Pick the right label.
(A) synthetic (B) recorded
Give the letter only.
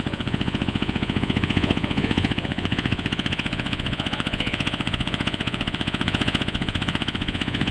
A